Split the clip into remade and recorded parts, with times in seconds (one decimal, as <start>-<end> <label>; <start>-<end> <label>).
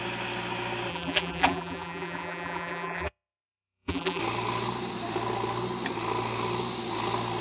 0.0-0.9 recorded; 0.9-4.2 remade; 4.2-7.4 recorded